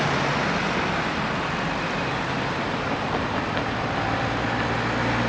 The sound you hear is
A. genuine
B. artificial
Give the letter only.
A